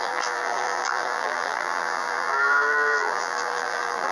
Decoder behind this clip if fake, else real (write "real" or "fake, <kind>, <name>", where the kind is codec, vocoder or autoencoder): fake, vocoder, BigVGAN v2